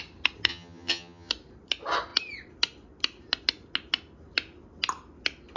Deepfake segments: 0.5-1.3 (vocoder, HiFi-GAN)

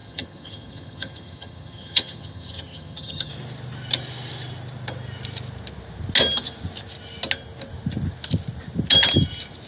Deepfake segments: 0.0-3.3 (vocoder, HiFi-GAN)

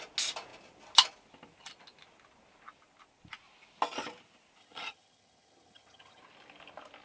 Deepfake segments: 4.6-6.2 (vocoder, HiFi-GAN)

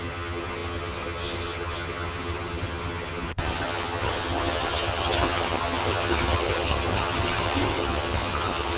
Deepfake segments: 0.0-8.8 (vocoder, HiFi-GAN)

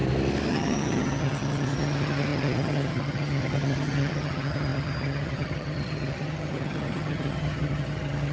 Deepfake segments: 0.5-8.3 (vocoder, HiFi-GAN)

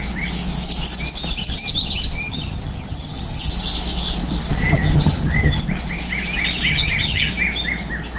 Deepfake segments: 1.4-3.5 (vocoder, HiFi-GAN); 4.5-5.6; 6.7-7.3

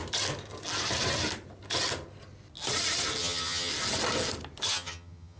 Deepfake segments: 3.2-3.7 (vocoder, HiFi-GAN); 4.7-5.4